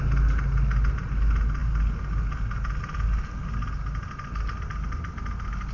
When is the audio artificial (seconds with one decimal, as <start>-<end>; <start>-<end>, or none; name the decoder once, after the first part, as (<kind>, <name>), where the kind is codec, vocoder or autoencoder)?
none